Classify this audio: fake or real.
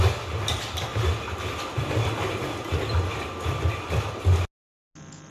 real